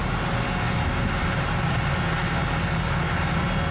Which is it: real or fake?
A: real